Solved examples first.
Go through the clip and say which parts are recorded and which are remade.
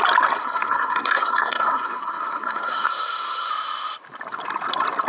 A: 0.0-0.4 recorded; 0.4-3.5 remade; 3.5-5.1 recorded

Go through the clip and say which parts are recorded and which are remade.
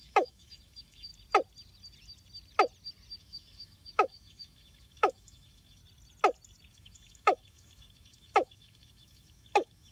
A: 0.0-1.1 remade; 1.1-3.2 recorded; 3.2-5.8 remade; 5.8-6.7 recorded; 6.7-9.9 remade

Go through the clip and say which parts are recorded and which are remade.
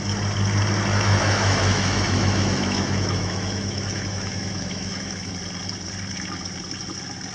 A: 0.0-0.9 recorded; 0.9-5.3 remade; 5.3-7.3 recorded